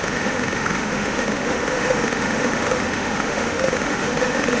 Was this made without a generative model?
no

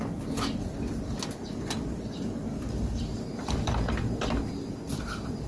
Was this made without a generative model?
yes